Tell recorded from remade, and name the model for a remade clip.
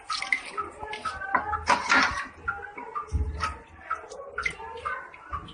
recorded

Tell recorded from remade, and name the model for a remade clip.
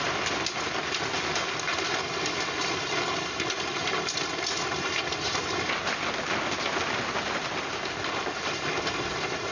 recorded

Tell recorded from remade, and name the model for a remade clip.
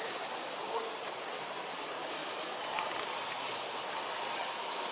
recorded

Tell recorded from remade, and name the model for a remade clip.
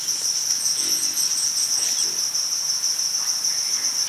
recorded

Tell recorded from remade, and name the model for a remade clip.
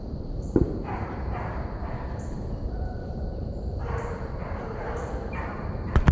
remade, vocoder, BigVGAN v2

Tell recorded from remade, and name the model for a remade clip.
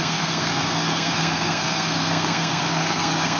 remade, codec, SNAC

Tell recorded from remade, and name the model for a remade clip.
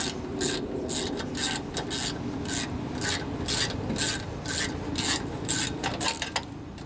recorded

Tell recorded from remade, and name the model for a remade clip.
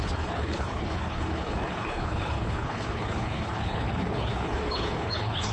remade, codec, HILCodec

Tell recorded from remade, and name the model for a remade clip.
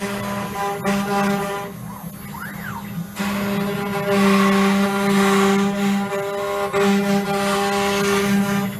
recorded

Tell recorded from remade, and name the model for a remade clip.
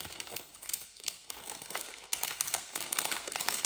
remade, codec, SNAC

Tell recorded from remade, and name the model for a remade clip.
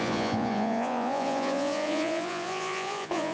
remade, vocoder, Vocos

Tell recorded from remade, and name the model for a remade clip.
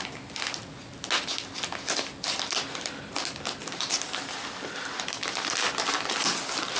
recorded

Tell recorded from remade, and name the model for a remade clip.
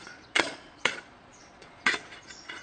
remade, vocoder, Vocos